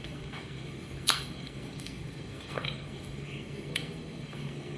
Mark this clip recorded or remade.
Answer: remade